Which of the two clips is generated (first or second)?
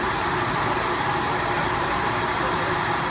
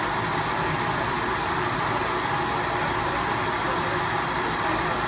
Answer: first